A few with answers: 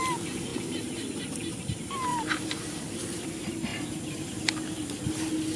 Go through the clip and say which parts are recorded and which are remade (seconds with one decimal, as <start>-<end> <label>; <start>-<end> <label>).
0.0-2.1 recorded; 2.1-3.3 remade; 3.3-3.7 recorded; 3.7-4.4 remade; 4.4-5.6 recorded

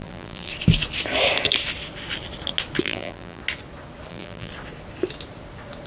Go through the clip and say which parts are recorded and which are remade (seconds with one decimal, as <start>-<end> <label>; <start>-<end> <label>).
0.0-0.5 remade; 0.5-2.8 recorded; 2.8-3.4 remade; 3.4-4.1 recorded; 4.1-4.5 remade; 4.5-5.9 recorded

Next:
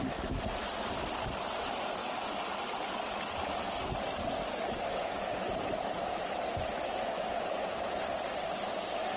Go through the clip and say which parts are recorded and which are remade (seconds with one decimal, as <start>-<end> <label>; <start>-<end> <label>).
0.0-9.2 recorded

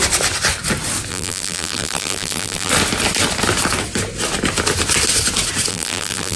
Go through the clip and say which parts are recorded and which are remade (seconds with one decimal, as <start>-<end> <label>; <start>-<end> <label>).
0.0-1.1 recorded; 1.1-2.7 remade; 2.7-5.7 recorded; 5.7-6.4 remade

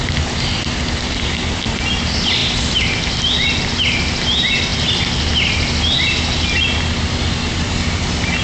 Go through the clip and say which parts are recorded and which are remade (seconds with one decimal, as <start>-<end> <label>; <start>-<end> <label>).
0.0-2.4 recorded; 2.4-3.6 remade; 3.6-8.4 recorded